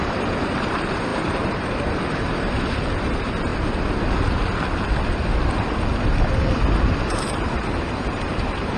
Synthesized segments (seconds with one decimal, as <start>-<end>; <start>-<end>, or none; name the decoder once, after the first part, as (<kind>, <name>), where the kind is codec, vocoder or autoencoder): 0.0-3.5 (vocoder, BigVGAN v2); 7.0-8.8